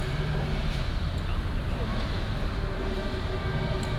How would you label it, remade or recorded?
recorded